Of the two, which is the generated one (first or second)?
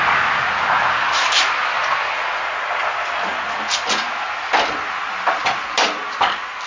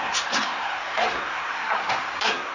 second